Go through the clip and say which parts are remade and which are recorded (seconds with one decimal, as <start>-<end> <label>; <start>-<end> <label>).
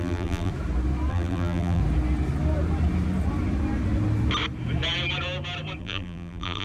0.0-0.5 remade; 0.5-1.1 recorded; 1.1-1.8 remade; 1.8-5.8 recorded; 5.8-6.6 remade